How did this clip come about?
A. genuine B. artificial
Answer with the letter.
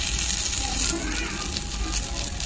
A